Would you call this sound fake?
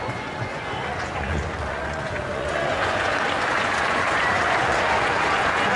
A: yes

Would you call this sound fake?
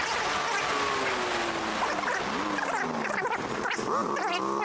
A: no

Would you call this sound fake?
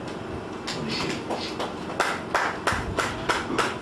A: no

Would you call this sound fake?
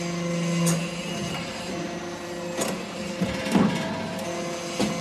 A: no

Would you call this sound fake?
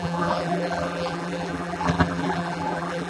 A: yes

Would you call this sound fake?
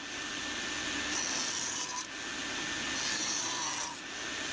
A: no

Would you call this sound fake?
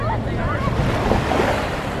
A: no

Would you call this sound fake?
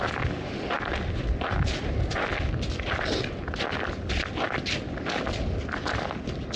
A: no